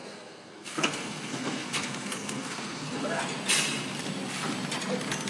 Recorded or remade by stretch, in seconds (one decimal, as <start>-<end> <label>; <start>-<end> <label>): 0.0-3.2 remade; 3.2-5.3 recorded